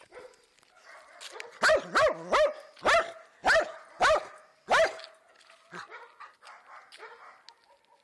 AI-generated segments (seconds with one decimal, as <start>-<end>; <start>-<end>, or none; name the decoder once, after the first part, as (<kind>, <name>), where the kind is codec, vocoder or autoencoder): none